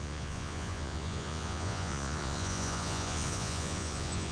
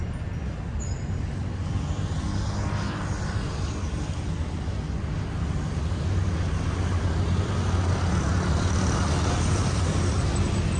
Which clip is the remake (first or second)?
first